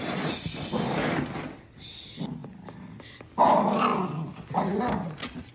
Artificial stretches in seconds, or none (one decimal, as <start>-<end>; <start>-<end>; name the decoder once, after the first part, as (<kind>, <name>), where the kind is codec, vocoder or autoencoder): none